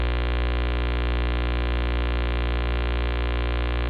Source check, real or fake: real